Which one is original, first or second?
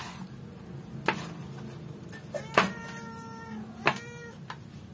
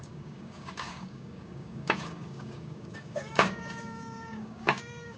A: first